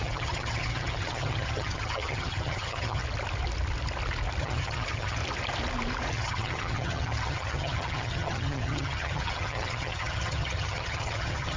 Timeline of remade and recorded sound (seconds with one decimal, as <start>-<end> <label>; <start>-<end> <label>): 0.0-3.0 remade; 3.0-4.4 recorded; 4.4-5.2 remade; 5.2-6.1 recorded; 6.1-11.6 remade